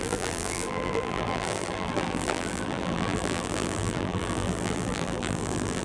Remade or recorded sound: remade